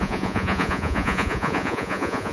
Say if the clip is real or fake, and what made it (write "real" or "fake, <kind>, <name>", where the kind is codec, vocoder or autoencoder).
fake, vocoder, Vocos